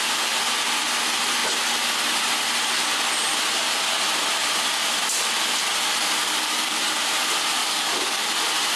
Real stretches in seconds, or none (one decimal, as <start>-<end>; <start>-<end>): 0.0-6.2; 6.8-7.6; 8.3-8.8